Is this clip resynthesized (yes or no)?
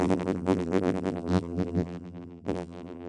yes